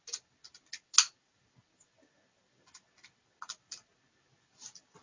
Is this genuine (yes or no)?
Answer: yes